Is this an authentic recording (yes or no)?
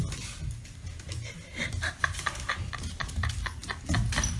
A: yes